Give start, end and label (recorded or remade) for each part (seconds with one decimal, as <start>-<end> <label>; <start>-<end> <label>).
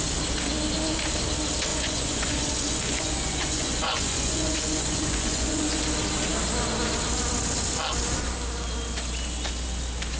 0.0-1.7 recorded; 1.7-5.8 remade; 5.8-10.2 recorded